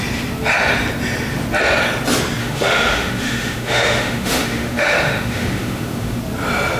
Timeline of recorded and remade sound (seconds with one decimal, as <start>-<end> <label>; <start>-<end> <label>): 0.0-2.4 recorded; 2.4-6.2 remade; 6.2-6.8 recorded

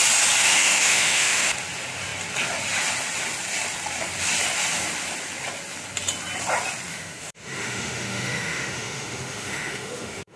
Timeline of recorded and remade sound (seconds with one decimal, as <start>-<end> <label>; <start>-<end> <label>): 0.0-0.4 recorded; 0.4-1.5 remade; 1.5-6.9 recorded; 6.9-10.4 remade

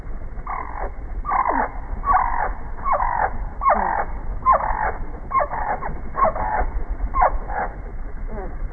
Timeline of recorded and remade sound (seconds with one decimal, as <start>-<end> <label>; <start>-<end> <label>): 0.0-2.9 recorded; 2.9-3.4 remade; 3.4-7.9 recorded; 7.9-8.7 remade

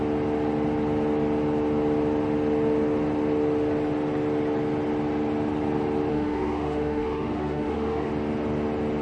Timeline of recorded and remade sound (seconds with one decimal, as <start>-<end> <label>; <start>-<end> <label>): 0.0-6.1 recorded; 6.1-8.1 remade; 8.1-9.0 recorded